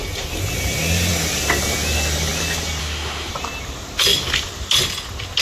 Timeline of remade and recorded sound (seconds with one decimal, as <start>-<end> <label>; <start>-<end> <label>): 0.0-2.8 recorded; 2.8-3.3 remade; 3.3-5.4 recorded